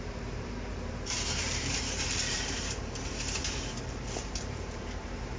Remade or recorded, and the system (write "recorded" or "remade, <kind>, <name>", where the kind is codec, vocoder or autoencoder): remade, vocoder, BigVGAN v2